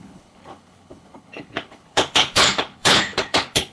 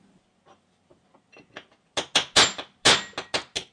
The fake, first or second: first